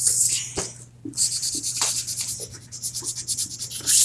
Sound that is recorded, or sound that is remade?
recorded